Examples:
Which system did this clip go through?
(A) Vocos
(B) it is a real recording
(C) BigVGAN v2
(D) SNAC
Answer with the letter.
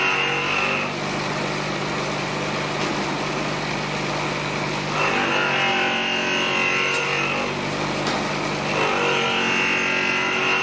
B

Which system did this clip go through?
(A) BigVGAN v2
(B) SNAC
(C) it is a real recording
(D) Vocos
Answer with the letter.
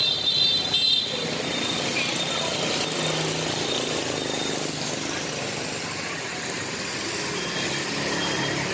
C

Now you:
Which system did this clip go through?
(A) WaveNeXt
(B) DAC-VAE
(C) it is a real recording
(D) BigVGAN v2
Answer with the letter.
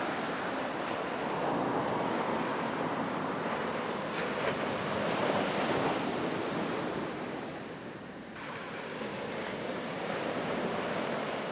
D